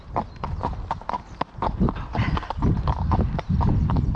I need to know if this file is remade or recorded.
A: recorded